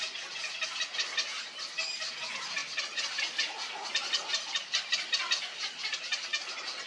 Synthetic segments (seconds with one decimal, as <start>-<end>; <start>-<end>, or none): 6.3-6.9